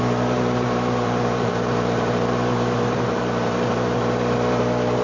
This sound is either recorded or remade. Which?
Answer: remade